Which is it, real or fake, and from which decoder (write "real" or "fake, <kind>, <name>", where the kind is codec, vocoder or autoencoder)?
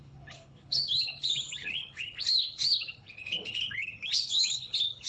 fake, codec, HILCodec